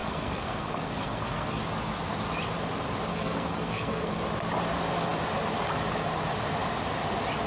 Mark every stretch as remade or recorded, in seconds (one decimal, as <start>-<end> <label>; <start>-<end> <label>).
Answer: 0.0-1.6 remade; 1.6-3.1 recorded; 3.1-4.2 remade; 4.2-7.5 recorded